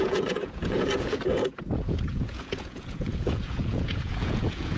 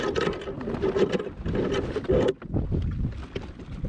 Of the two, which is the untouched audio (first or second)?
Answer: second